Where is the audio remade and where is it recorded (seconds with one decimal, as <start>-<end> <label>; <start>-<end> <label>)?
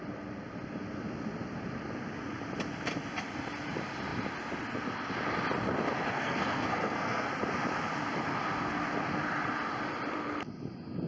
0.0-6.1 recorded; 6.1-7.3 remade; 7.3-11.1 recorded